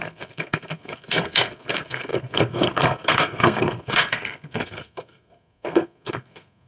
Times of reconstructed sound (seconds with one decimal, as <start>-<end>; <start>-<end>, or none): 0.0-6.7